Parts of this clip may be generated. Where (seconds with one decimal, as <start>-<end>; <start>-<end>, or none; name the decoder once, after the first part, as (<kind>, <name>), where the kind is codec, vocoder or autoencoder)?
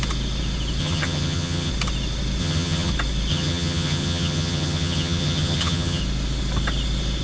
0.8-1.7 (vocoder, HiFi-GAN); 2.4-2.9; 3.3-6.0